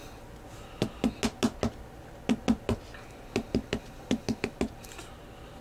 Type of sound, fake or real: real